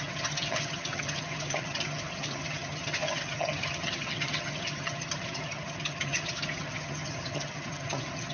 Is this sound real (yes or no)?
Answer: no